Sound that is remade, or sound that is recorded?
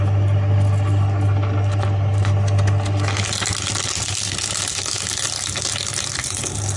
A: recorded